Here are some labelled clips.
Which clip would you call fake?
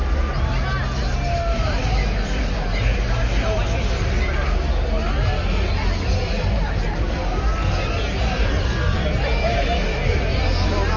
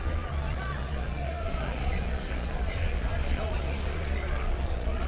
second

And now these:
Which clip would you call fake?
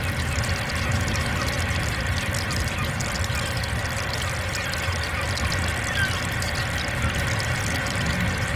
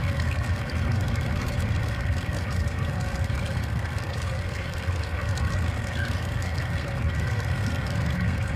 second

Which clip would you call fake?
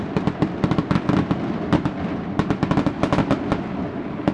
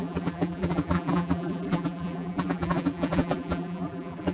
second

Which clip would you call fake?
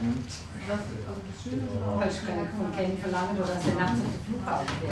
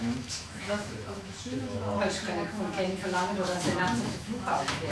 second